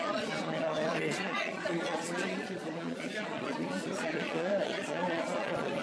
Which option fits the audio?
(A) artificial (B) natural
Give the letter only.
A